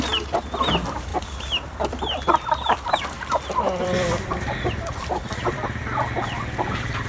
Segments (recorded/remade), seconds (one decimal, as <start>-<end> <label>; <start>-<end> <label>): 0.0-1.1 recorded; 1.1-4.5 remade; 4.5-4.9 recorded; 4.9-5.8 remade; 5.8-7.1 recorded